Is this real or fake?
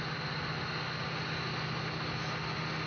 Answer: real